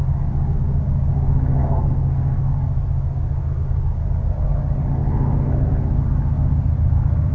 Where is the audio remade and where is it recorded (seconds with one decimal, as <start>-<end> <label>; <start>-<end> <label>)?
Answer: 0.0-1.6 recorded; 1.6-2.5 remade; 2.5-7.3 recorded